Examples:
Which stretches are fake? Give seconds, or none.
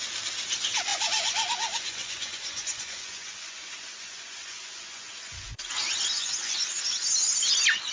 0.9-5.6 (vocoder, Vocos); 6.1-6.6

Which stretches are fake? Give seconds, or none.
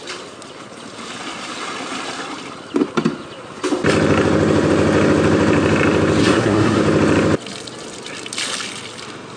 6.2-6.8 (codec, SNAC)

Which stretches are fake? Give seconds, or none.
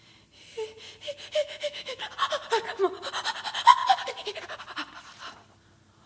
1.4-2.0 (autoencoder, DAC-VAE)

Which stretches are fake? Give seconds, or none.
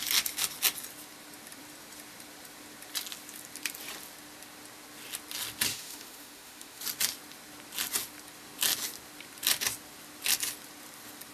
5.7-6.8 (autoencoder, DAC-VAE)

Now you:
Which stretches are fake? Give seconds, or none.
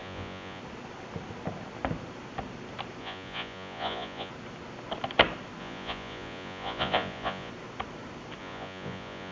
0.0-0.6 (vocoder, Vocos); 3.0-4.3; 5.6-7.5; 8.4-9.3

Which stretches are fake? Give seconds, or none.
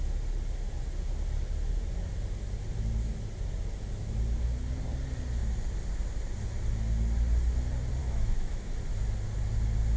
8.0-8.7 (autoencoder, DAC-VAE)